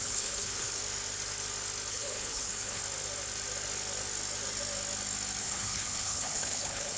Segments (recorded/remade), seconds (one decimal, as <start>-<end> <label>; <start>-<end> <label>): 0.0-0.8 remade; 0.8-1.9 recorded; 1.9-2.8 remade; 2.8-5.4 recorded; 5.4-7.0 remade